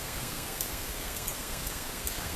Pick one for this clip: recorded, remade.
remade